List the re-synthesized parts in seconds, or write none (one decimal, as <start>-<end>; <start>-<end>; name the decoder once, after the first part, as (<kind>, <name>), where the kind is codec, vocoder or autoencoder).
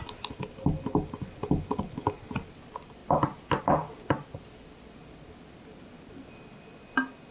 none